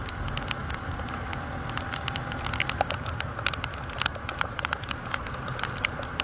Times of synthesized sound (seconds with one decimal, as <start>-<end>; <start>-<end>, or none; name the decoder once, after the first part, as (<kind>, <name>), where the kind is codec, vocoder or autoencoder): 0.6-1.2 (vocoder, BigVGAN v2); 4.1-5.3